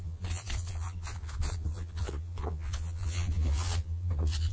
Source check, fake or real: fake